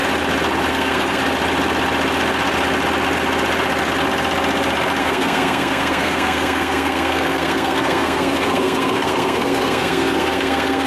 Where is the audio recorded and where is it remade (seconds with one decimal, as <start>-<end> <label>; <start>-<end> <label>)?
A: 0.0-0.7 recorded; 0.7-1.2 remade; 1.2-5.0 recorded; 5.0-10.9 remade